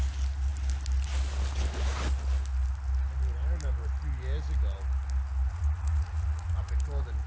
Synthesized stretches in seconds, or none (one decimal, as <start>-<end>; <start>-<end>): 5.5-6.7